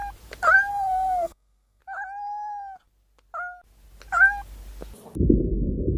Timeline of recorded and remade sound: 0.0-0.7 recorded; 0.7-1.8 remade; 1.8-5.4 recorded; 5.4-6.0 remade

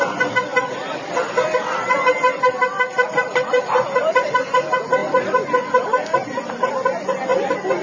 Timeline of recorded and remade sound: 0.0-7.8 recorded

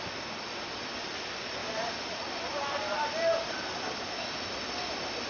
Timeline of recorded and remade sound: 0.0-5.3 remade

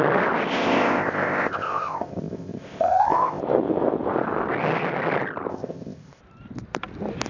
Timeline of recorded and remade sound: 0.0-0.5 recorded; 0.5-3.4 remade; 3.4-5.5 recorded; 5.5-6.2 remade; 6.2-7.3 recorded

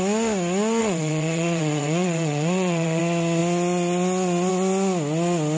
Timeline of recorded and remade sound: 0.0-0.8 recorded; 0.8-3.0 remade; 3.0-5.6 recorded

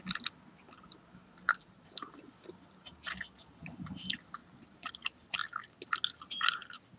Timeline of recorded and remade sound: 0.0-4.4 recorded; 4.4-4.9 remade; 4.9-7.0 recorded

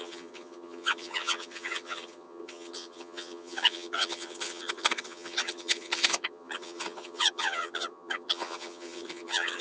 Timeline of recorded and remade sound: 0.0-9.6 remade

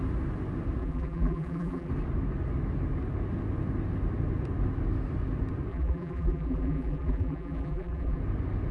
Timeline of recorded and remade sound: 0.0-0.8 recorded; 0.8-1.9 remade; 1.9-5.7 recorded; 5.7-8.2 remade; 8.2-8.7 recorded